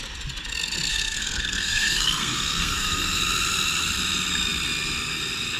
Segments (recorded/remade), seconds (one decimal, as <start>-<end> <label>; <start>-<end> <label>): 0.0-0.9 recorded; 0.9-3.2 remade; 3.2-5.6 recorded